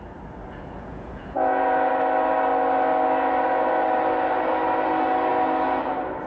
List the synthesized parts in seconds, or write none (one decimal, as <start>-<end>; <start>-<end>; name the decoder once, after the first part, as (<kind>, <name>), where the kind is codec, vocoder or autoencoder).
0.4-1.9 (vocoder, Vocos)